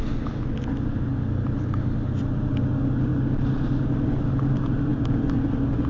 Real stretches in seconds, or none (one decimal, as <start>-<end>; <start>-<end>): 0.0-5.9